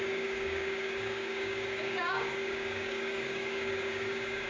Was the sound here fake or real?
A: fake